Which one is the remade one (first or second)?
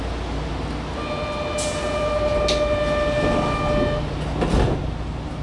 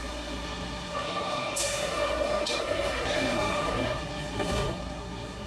second